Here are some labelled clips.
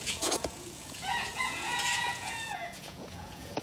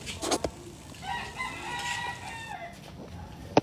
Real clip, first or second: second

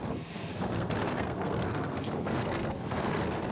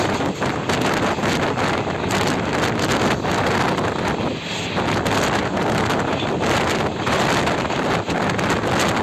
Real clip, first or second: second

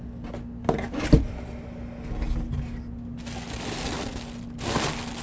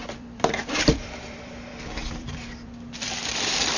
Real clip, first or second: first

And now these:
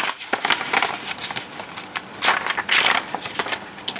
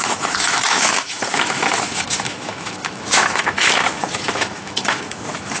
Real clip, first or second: first